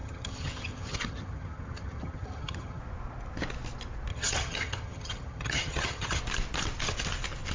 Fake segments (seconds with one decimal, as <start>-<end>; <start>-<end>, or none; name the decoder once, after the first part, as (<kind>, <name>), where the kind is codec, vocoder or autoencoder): 0.0-2.8 (vocoder, HiFi-GAN); 4.1-6.2